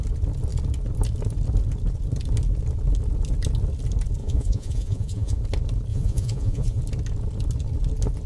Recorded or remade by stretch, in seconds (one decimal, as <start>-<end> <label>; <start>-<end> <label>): 0.0-4.2 recorded; 4.2-5.4 remade; 5.4-5.9 recorded; 5.9-6.8 remade; 6.8-8.3 recorded